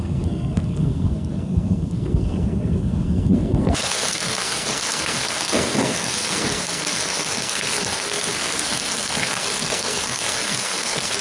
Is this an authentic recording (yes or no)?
no